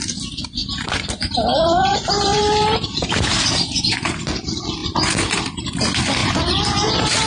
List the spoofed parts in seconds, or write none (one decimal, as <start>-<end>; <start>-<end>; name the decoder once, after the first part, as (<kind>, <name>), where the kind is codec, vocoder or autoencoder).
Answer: 0.6-4.2 (vocoder, BigVGAN v2); 4.8-5.6; 6.2-7.3